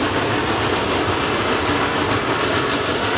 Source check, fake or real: real